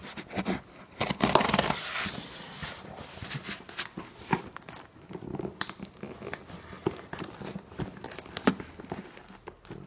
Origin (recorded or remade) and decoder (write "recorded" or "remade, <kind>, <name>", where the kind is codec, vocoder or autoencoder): recorded